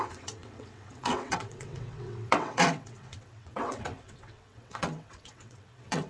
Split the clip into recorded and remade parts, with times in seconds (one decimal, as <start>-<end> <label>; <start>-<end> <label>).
0.0-6.1 remade